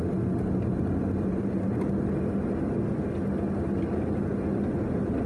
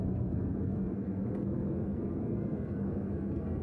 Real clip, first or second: first